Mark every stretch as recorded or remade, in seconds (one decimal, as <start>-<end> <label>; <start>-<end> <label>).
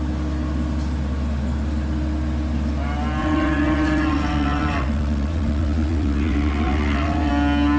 0.0-3.2 recorded; 3.2-7.3 remade; 7.3-7.8 recorded